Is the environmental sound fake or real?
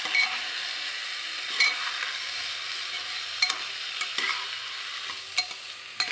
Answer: real